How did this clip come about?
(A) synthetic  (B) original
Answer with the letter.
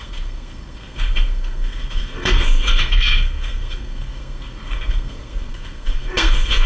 A